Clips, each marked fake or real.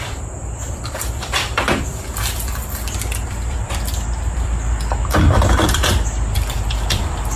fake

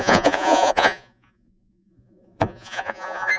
fake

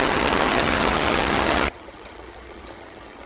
fake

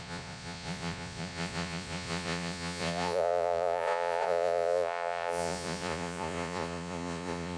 fake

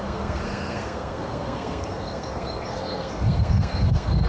fake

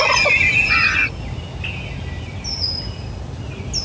real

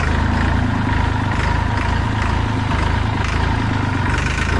real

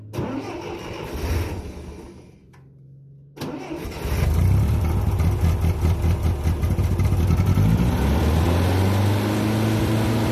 real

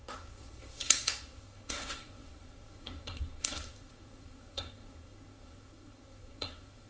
fake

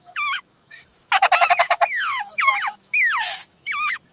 fake